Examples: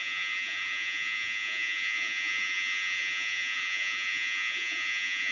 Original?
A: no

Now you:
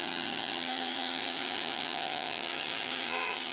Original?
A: no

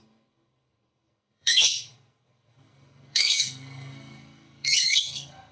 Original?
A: no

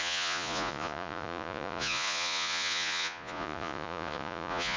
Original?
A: no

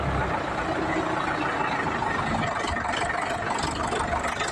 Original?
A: yes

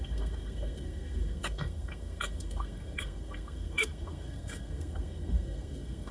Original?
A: no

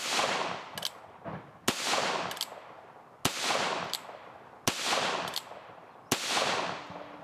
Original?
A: yes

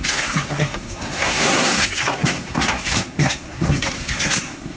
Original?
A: no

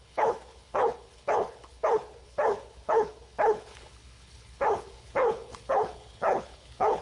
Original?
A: no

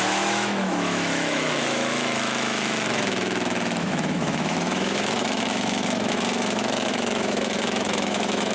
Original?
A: no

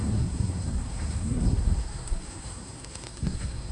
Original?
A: no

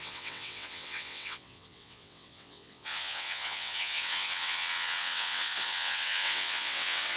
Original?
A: no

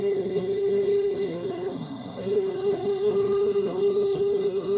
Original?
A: no